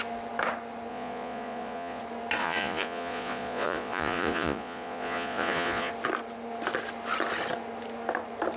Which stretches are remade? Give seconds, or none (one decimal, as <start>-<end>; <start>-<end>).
0.9-2.0; 2.4-5.9